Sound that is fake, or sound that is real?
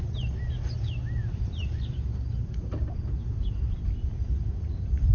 real